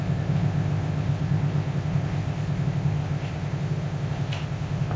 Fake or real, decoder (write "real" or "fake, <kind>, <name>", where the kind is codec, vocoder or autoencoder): fake, codec, ZipCodec